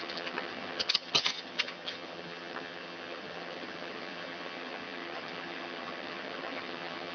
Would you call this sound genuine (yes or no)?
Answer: no